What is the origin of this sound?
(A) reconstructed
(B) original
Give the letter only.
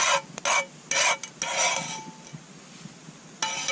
B